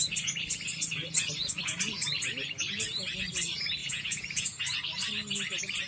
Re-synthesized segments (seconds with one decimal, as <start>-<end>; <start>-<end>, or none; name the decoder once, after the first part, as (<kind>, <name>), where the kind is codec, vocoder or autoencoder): 3.8-4.6 (vocoder, Vocos)